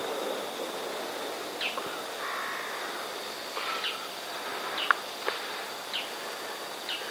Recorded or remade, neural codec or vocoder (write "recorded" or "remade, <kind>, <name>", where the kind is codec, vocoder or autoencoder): recorded